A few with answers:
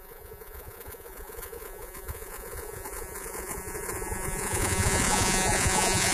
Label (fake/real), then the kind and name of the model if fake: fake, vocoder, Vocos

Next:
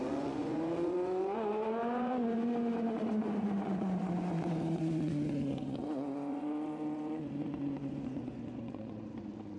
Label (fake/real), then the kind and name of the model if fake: fake, vocoder, Vocos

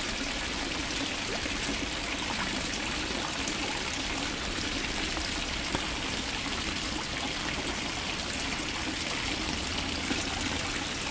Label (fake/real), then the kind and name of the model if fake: real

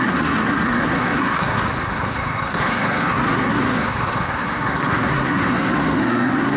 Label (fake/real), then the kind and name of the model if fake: fake, codec, SNAC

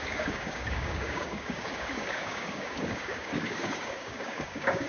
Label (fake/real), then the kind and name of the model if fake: fake, codec, DAC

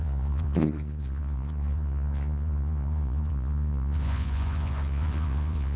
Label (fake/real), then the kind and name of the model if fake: fake, vocoder, Vocos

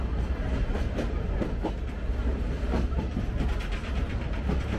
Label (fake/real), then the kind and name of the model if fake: real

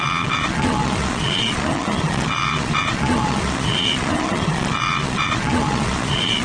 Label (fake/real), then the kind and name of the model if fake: fake, vocoder, Vocos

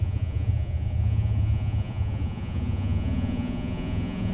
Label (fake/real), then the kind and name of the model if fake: fake, vocoder, Vocos